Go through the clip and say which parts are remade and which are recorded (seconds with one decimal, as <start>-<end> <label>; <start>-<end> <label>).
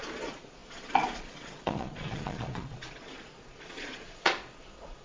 0.0-5.0 remade